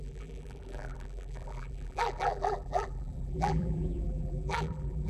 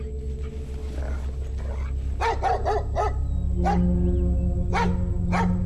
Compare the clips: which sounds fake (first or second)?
first